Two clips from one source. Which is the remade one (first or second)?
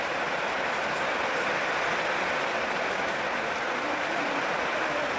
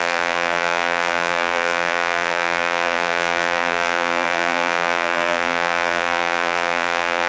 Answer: second